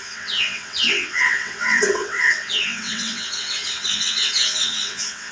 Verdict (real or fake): fake